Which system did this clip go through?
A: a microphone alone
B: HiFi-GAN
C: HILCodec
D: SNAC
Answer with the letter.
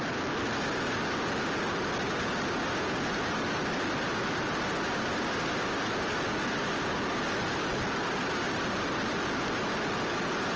A